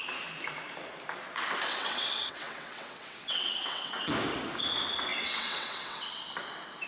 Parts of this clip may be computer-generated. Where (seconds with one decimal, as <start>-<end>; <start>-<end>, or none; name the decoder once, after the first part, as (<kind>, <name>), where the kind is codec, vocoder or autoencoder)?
1.7-4.1 (vocoder, WaveNeXt); 5.1-6.2